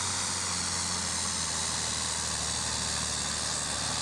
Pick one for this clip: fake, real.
real